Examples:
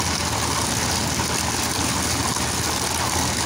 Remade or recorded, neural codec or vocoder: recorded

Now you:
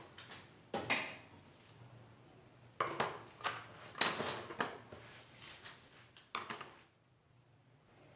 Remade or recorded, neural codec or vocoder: recorded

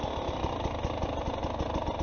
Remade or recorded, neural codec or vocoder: recorded